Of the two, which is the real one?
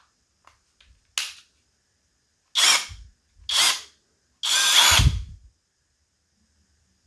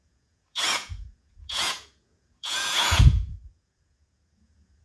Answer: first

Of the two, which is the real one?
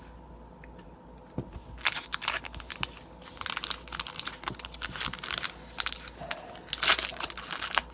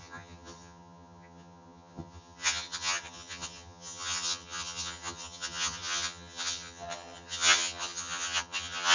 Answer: first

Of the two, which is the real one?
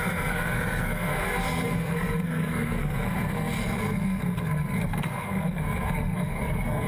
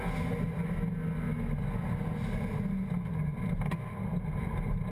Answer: second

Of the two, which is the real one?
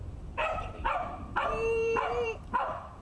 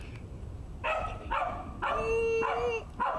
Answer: second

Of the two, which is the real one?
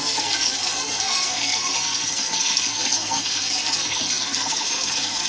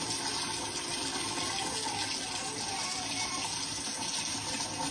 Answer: second